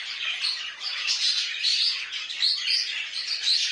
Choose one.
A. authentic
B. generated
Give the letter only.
B